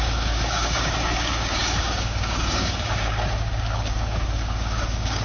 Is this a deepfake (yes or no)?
yes